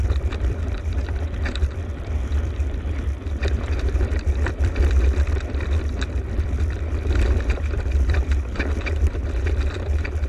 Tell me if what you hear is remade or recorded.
remade